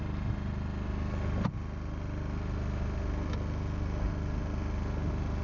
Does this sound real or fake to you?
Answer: real